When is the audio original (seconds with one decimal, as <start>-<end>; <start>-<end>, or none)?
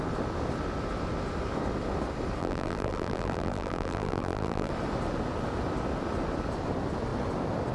0.0-2.4; 4.7-7.7